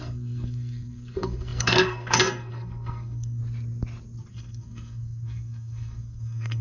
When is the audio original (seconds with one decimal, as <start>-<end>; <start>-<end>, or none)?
3.4-4.3